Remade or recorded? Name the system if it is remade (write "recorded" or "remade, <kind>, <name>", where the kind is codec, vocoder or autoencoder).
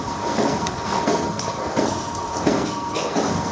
remade, codec, SNAC